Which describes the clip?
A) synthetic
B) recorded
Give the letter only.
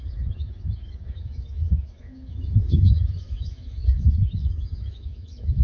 A